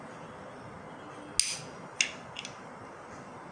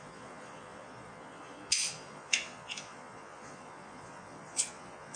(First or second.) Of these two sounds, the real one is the first